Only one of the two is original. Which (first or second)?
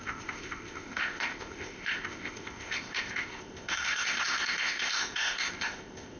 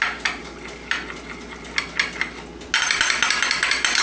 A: second